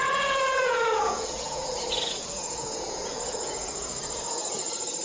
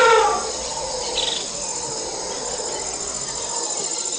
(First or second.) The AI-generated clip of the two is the first